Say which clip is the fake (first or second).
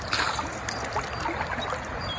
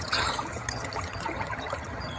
second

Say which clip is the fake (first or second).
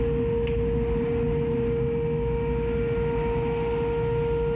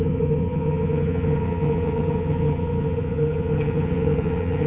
second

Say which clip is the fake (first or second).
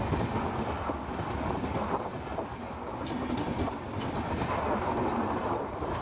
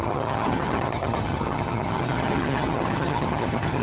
second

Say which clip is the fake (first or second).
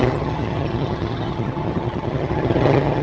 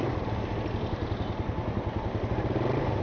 first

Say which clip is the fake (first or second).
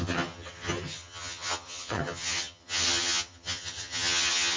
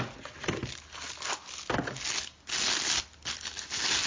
first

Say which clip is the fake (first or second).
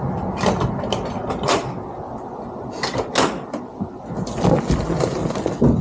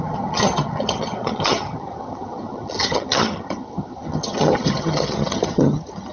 second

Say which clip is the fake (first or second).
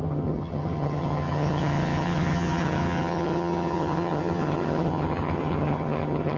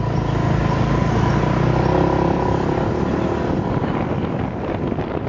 first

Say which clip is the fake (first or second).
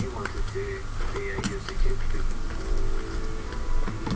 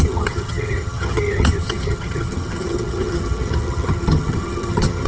second